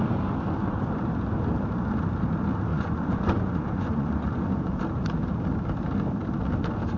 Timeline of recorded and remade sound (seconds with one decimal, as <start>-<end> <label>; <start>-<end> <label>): 0.0-2.7 recorded; 2.7-4.8 remade; 4.8-7.0 recorded

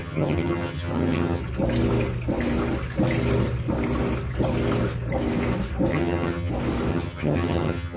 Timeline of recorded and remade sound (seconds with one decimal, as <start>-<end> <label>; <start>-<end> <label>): 0.0-1.4 remade; 1.4-5.9 recorded; 5.9-6.5 remade; 6.5-6.9 recorded; 6.9-8.0 remade

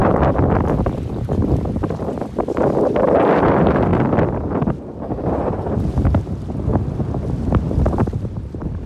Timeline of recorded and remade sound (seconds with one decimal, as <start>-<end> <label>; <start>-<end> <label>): 0.0-6.7 remade; 6.7-7.5 recorded; 7.5-8.9 remade

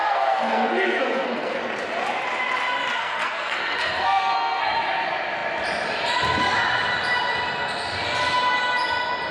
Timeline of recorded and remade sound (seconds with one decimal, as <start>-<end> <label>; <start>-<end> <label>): 0.0-1.6 remade; 1.6-3.0 recorded; 3.0-4.6 remade; 4.6-9.3 recorded

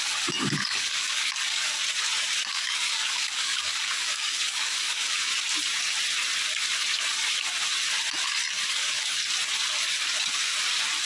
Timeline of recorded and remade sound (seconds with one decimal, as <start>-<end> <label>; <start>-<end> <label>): 0.0-1.8 remade; 1.8-2.5 recorded; 2.5-5.3 remade; 5.3-8.7 recorded; 8.7-9.2 remade; 9.2-11.0 recorded

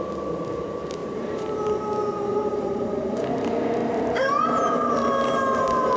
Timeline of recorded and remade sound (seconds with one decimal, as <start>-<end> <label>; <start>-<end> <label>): 0.0-1.0 recorded; 1.0-1.7 remade; 1.7-2.4 recorded; 2.4-3.2 remade; 3.2-3.8 recorded; 3.8-4.9 remade; 4.9-6.0 recorded